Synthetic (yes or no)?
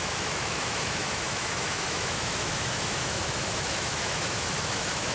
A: yes